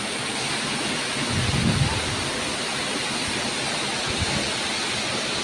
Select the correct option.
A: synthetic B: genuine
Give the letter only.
B